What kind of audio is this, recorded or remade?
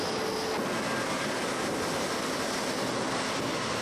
recorded